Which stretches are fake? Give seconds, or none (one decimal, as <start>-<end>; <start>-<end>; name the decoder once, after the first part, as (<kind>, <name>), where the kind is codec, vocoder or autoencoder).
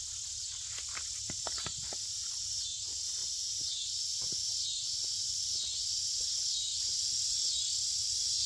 3.2-4.0 (vocoder, BigVGAN v2); 4.5-6.0; 6.7-8.5